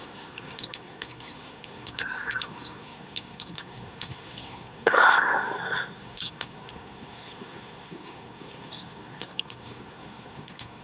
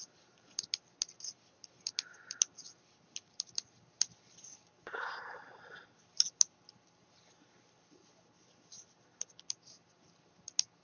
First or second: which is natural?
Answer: second